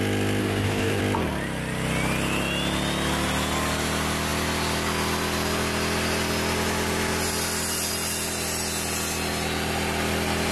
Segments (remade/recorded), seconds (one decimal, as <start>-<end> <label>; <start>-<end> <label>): 0.0-0.4 recorded; 0.4-1.0 remade; 1.0-10.5 recorded